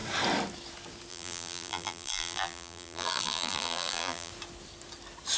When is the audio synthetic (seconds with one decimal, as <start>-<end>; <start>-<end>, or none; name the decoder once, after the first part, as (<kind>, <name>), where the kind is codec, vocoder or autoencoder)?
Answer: 1.1-4.3 (vocoder, BigVGAN v2)